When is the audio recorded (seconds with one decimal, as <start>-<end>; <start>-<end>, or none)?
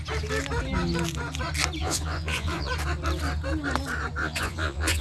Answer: 0.0-1.8; 2.7-4.2